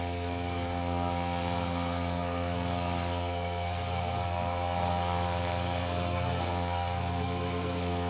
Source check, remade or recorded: remade